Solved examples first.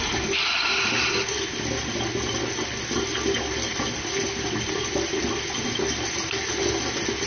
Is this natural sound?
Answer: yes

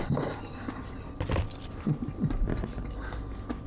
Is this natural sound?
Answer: yes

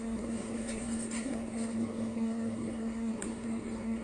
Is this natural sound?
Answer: no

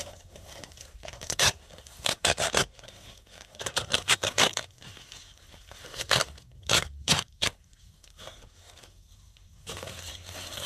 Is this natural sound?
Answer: no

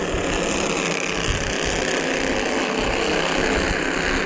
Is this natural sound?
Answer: yes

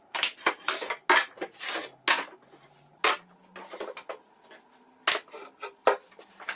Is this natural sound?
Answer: yes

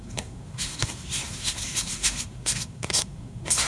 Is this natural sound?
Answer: no